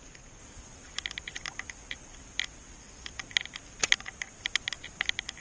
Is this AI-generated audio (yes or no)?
no